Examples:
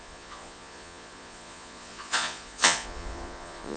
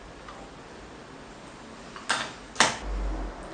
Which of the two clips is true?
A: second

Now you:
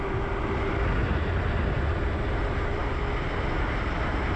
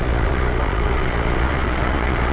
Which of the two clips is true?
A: first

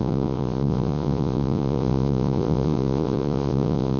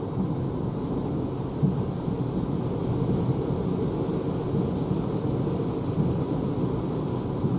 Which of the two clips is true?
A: second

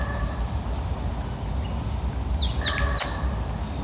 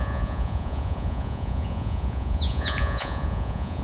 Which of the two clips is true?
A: first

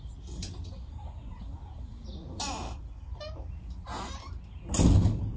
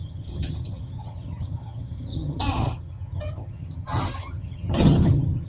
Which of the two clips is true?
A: first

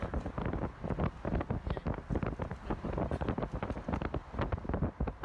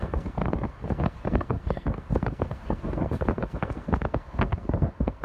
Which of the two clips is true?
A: first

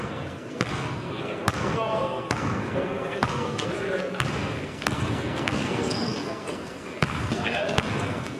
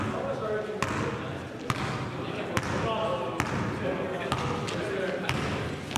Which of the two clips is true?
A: second